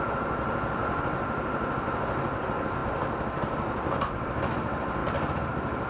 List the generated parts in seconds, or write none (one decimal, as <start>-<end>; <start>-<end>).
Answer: none